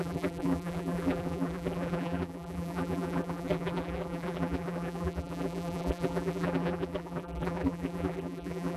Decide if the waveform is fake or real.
fake